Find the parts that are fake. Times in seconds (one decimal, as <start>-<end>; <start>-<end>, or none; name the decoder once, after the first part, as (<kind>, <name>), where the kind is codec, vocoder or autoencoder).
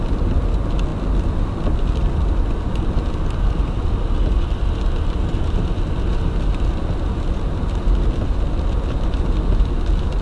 none